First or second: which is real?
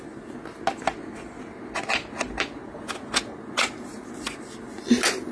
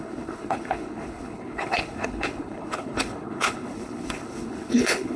first